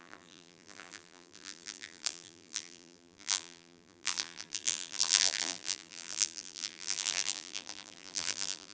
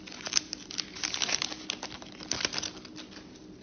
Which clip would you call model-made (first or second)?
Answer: first